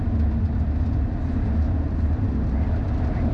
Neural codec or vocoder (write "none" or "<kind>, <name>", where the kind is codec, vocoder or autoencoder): none